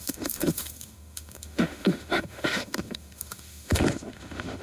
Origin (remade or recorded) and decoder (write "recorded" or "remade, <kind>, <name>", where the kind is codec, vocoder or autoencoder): remade, autoencoder, DAC-VAE